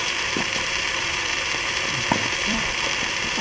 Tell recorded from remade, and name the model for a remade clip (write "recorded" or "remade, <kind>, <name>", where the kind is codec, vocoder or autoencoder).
remade, vocoder, BigVGAN v2